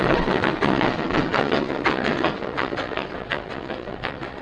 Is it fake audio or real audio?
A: fake